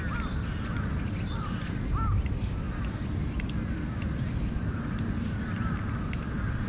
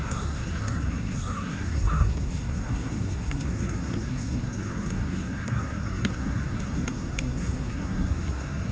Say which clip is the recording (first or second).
first